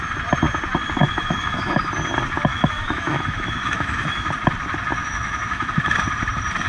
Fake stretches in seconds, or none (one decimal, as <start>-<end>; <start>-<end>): 1.0-1.8; 2.5-4.3; 4.9-5.7

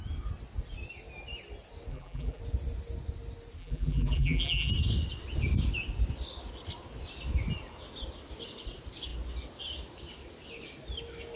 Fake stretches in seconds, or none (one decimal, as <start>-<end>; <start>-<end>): 1.9-2.4; 3.6-4.7

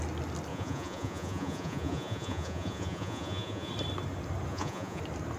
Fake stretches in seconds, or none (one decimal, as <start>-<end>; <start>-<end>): 0.5-3.7; 4.5-5.0

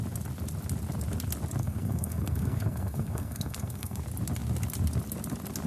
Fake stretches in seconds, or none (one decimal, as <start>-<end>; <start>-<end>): 1.6-4.0